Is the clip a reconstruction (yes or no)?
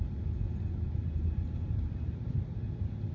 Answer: no